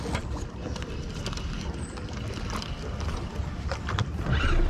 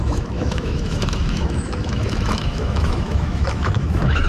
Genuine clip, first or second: first